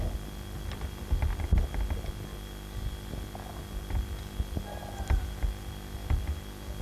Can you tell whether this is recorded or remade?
recorded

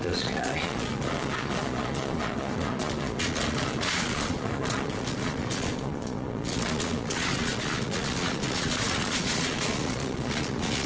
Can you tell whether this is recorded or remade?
remade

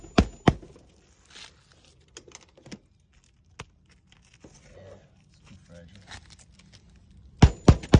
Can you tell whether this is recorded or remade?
recorded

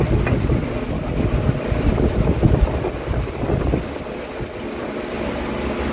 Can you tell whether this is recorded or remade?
recorded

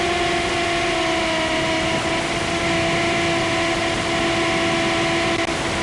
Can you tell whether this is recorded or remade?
recorded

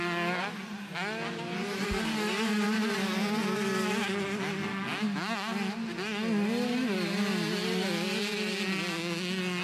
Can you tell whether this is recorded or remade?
recorded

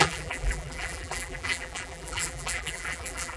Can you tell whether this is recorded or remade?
remade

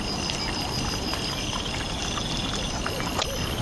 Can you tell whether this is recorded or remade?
recorded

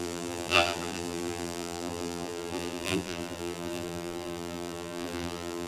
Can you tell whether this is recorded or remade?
remade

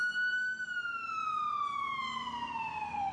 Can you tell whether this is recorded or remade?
recorded